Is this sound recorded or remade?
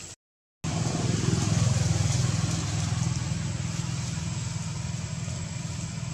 recorded